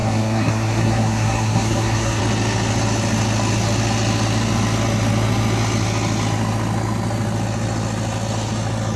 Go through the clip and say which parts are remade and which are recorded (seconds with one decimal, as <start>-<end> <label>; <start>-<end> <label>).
0.0-2.2 remade; 2.2-9.0 recorded